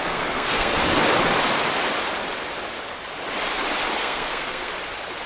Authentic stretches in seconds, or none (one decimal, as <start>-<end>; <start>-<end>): 0.8-4.0; 4.7-5.3